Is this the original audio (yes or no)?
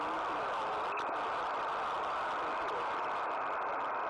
yes